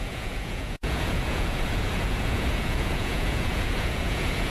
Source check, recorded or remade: remade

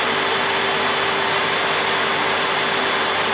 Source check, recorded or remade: recorded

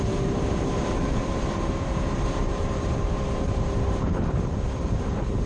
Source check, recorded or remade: remade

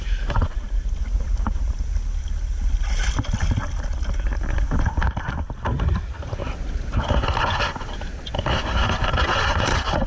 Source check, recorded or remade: recorded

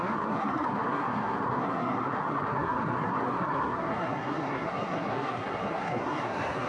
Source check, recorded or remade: remade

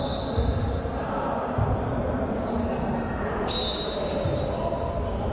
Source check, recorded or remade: recorded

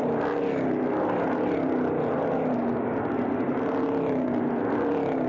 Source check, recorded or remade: recorded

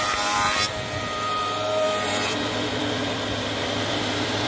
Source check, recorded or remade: remade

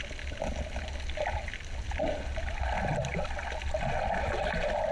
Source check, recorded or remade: recorded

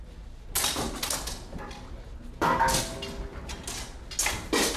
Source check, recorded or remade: recorded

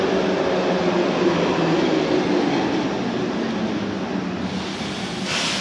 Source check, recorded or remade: recorded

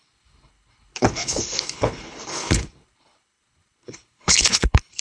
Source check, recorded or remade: remade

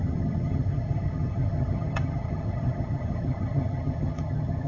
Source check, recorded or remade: remade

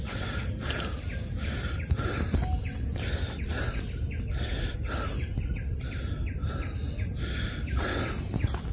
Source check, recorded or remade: recorded